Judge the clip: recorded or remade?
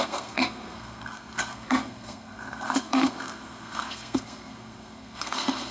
remade